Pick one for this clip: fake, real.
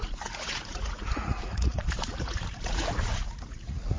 fake